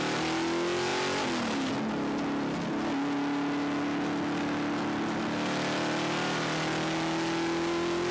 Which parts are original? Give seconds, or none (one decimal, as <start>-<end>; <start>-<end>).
0.0-8.1